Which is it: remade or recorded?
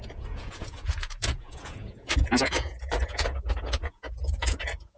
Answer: remade